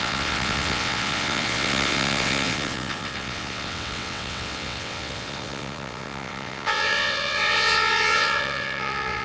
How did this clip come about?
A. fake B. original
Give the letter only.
A